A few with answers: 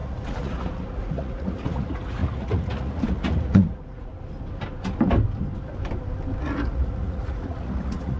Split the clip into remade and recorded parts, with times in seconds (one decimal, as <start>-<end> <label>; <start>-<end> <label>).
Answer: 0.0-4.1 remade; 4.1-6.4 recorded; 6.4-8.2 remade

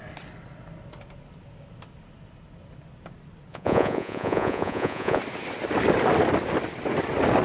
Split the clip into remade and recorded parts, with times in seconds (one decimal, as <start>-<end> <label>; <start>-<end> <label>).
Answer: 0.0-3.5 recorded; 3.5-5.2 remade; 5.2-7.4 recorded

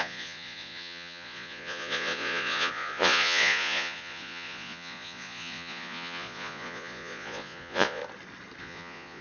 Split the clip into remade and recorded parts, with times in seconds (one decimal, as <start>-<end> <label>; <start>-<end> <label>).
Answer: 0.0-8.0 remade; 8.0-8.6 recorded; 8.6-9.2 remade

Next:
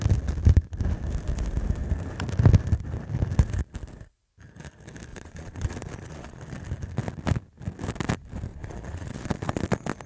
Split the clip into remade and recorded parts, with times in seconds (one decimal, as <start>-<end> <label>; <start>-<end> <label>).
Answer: 0.0-5.1 recorded; 5.1-6.4 remade; 6.4-8.5 recorded; 8.5-9.6 remade; 9.6-10.1 recorded